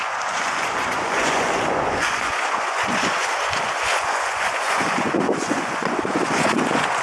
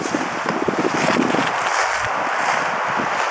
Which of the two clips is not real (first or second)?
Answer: first